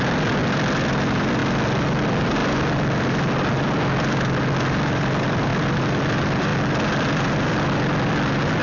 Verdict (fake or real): real